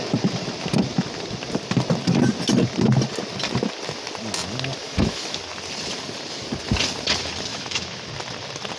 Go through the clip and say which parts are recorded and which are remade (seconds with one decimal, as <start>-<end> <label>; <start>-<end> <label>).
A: 0.0-4.8 recorded; 4.8-5.4 remade; 5.4-7.5 recorded; 7.5-8.1 remade; 8.1-8.8 recorded